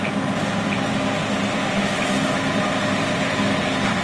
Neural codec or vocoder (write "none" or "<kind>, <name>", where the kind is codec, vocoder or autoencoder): none